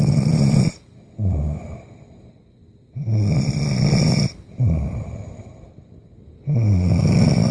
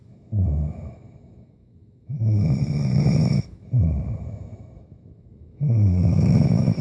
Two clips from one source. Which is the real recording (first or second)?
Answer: first